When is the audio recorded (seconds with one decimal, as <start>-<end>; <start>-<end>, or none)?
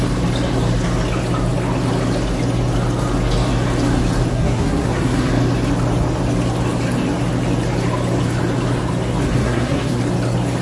0.0-4.3; 5.3-9.4; 10.0-10.6